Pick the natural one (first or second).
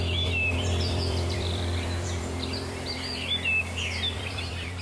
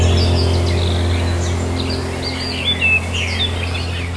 second